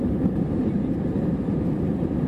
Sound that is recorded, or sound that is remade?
remade